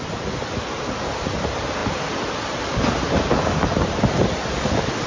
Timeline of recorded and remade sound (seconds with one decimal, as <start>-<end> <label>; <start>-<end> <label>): 0.0-5.1 recorded